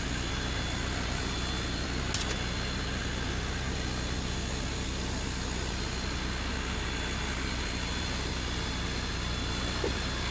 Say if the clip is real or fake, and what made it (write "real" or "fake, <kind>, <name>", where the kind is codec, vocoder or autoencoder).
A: real